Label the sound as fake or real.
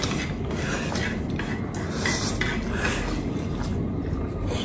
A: real